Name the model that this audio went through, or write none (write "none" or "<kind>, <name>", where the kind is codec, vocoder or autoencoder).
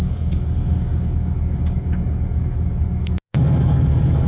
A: codec, DAC